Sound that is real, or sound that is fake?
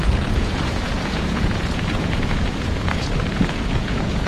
fake